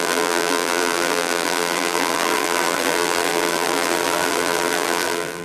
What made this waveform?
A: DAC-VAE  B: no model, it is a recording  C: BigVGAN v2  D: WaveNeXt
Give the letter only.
C